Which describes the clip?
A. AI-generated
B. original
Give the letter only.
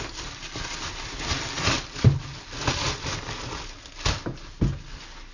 B